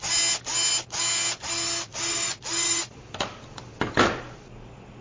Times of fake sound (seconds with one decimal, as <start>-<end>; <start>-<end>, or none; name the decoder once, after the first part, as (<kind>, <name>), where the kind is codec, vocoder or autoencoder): 1.9-5.0 (vocoder, BigVGAN v2)